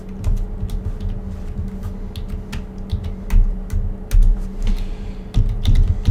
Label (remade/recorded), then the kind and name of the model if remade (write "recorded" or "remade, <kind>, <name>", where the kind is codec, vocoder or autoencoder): recorded